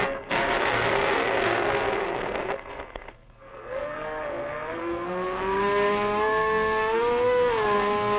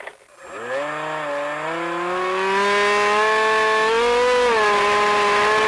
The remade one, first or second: first